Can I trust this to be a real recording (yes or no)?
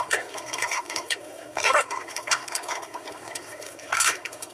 no